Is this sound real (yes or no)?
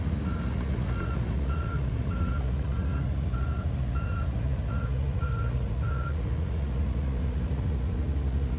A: no